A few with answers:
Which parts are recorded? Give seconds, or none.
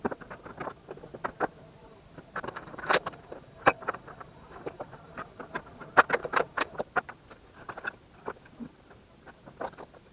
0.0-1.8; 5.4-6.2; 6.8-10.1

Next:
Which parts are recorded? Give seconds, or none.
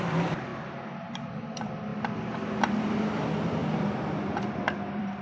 1.9-2.6; 3.6-4.3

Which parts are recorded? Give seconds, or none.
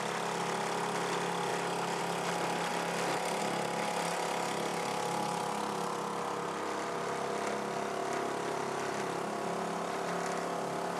0.0-11.0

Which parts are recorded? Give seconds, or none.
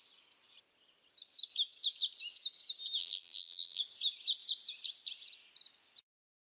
0.0-3.0; 3.8-6.4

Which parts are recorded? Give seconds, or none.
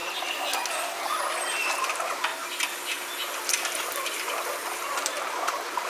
0.0-1.8; 2.3-4.9